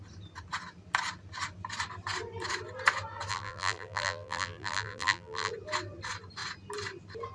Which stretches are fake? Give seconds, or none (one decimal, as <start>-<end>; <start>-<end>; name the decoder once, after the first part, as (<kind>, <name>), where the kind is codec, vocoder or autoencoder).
3.3-5.5 (vocoder, BigVGAN v2)